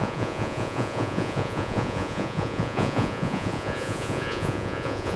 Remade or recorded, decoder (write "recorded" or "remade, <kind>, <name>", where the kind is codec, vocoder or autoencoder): remade, vocoder, Vocos